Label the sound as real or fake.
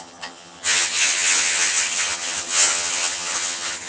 fake